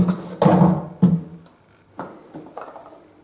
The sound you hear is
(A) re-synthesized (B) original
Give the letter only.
B